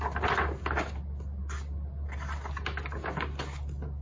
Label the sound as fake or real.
real